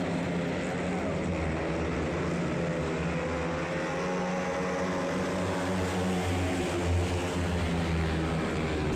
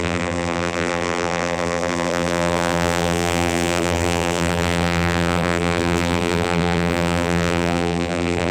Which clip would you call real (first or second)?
first